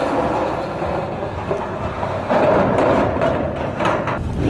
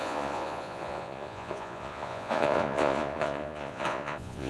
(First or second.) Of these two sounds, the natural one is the first